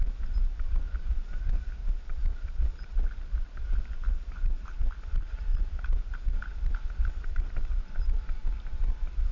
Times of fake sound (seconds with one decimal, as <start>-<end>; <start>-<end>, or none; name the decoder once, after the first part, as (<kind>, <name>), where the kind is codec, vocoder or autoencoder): 1.8-4.9 (vocoder, BigVGAN v2)